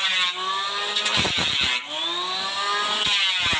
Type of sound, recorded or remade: recorded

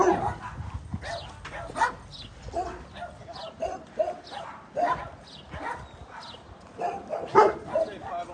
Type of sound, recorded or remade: recorded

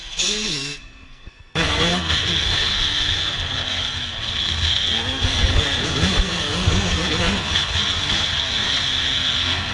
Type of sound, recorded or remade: remade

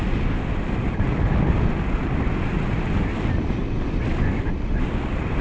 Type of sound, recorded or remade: recorded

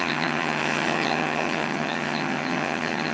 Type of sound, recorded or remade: remade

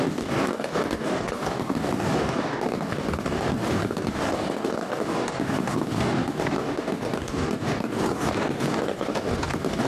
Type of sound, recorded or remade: remade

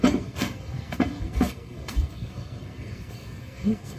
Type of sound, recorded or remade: remade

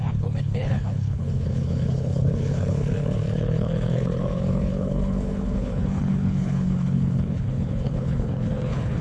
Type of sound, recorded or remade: remade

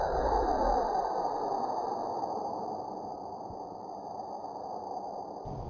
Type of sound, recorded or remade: remade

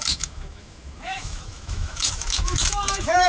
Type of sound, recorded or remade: remade